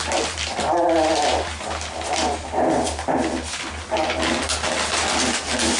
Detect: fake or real real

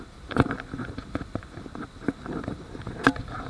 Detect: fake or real real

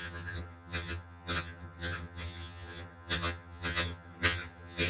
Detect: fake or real fake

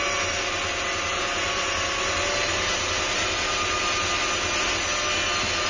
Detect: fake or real real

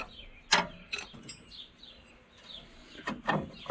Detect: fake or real real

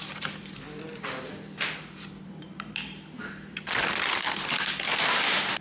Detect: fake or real fake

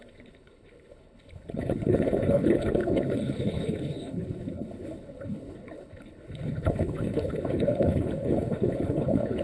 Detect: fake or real fake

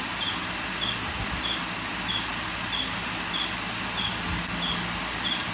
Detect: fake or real real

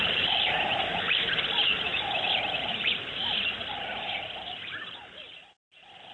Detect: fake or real fake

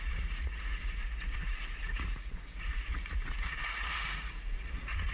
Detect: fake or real fake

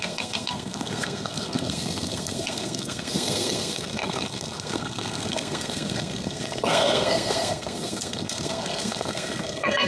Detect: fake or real fake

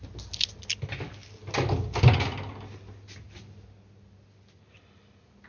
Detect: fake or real real